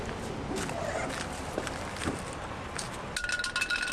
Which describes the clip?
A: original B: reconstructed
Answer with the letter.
A